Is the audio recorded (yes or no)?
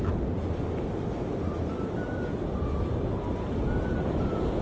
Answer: yes